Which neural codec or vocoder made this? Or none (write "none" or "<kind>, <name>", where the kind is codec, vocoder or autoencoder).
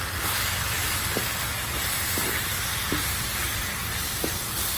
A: none